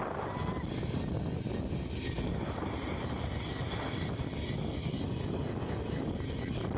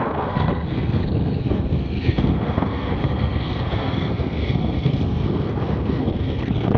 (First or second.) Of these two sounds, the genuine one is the first